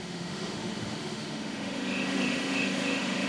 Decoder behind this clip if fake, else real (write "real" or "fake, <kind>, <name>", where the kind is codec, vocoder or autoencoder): fake, autoencoder, DAC-VAE